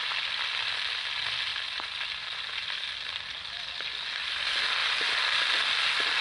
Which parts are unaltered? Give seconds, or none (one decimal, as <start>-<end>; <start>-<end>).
0.0-6.2